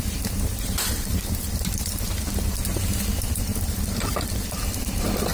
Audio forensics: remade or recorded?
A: remade